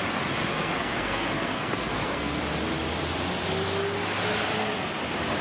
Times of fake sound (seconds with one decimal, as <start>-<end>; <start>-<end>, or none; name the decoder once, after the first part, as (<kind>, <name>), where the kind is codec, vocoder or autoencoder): 0.5-2.4 (codec, SNAC)